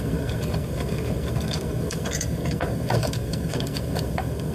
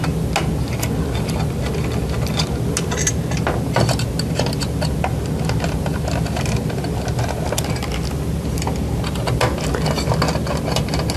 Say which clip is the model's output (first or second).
first